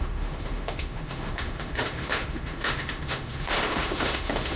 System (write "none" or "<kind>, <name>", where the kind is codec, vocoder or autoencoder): autoencoder, DAC-VAE